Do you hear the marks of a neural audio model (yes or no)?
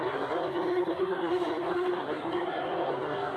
yes